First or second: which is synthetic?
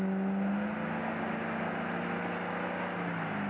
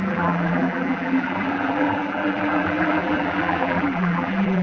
second